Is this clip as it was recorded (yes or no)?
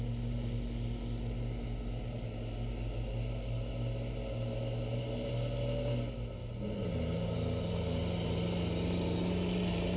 yes